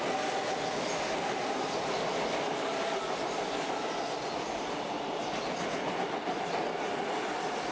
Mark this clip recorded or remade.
recorded